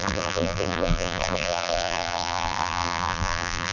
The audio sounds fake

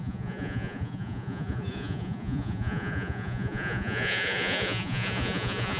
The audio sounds fake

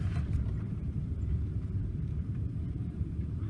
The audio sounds fake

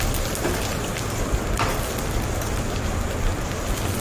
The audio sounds real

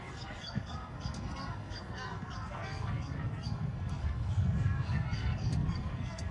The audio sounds fake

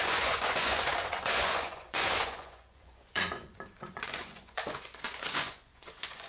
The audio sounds fake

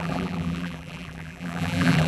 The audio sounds fake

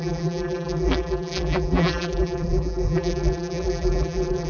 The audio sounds fake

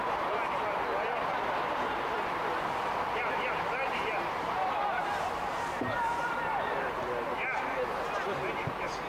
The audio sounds real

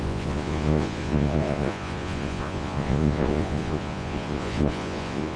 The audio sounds fake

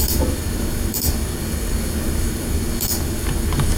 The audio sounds fake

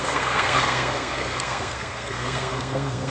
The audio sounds fake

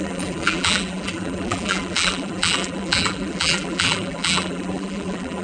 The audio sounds fake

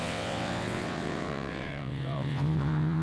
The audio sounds fake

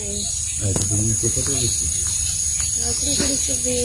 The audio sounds real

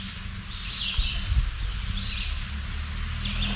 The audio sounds real